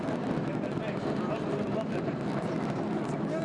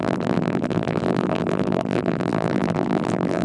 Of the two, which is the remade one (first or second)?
second